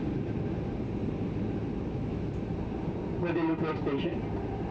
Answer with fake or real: fake